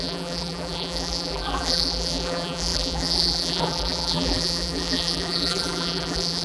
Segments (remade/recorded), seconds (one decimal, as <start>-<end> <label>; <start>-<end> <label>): 0.0-6.4 remade